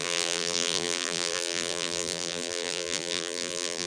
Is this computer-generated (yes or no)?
yes